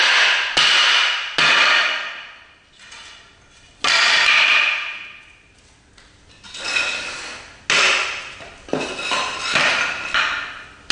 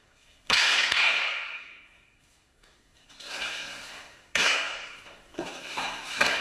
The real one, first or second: first